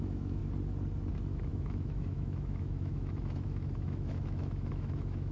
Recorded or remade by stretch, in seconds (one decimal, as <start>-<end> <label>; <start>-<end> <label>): 0.0-0.4 remade; 0.4-1.1 recorded; 1.1-5.3 remade